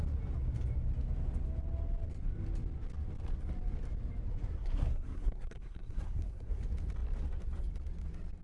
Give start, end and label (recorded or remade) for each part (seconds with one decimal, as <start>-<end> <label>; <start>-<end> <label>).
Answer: 0.0-4.3 recorded; 4.3-6.6 remade; 6.6-8.4 recorded